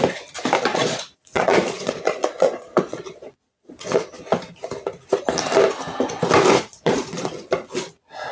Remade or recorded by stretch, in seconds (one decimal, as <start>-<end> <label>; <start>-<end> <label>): 0.0-0.7 recorded; 0.7-4.1 remade; 4.1-6.7 recorded; 6.7-7.3 remade; 7.3-8.3 recorded